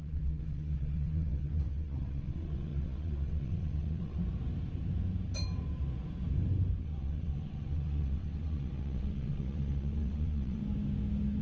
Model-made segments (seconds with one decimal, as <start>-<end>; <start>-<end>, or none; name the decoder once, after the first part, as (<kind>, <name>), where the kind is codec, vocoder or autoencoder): 0.0-4.2 (vocoder, WaveNeXt); 6.8-10.6